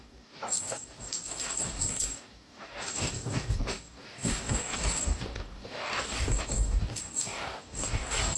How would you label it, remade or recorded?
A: remade